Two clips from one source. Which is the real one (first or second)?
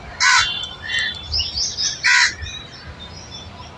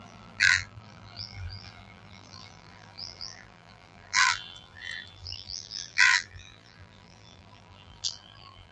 first